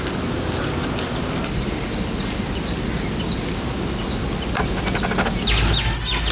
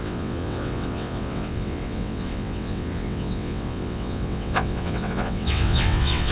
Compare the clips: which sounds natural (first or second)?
first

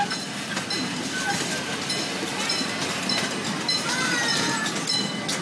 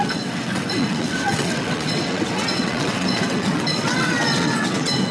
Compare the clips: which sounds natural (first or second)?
first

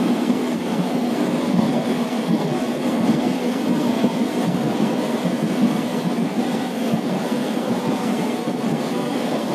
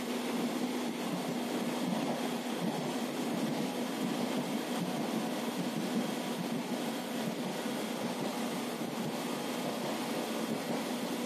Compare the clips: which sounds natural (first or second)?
second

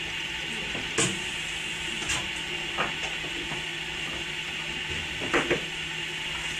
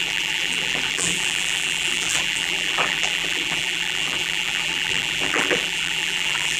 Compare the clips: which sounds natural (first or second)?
first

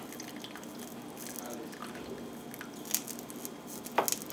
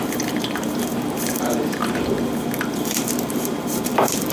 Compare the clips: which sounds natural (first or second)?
first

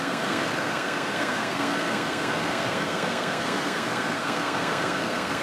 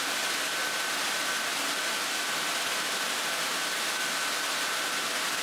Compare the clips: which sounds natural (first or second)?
second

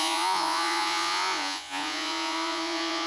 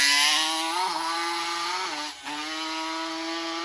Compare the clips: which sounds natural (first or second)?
second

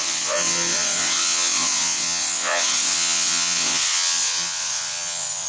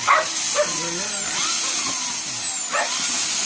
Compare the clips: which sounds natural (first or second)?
second